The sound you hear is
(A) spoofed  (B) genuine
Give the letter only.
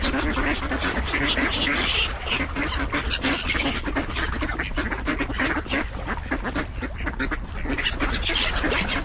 B